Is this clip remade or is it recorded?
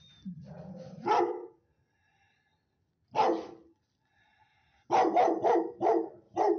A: recorded